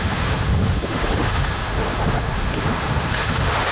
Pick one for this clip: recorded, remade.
remade